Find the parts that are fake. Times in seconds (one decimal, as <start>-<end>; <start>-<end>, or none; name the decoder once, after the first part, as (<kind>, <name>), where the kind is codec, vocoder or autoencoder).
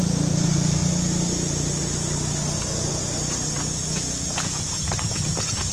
0.0-0.8 (vocoder, Vocos); 2.7-5.7